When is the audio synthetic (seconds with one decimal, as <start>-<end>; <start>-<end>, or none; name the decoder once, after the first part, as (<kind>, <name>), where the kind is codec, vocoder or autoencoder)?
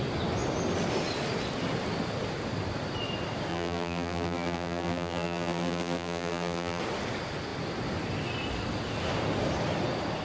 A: 3.5-6.8 (vocoder, BigVGAN v2)